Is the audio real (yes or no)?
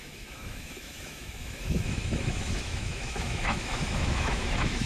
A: no